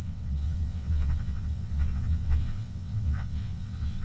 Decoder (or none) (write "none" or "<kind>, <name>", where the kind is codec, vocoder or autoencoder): vocoder, WaveNeXt